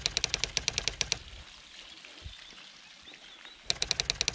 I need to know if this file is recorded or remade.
recorded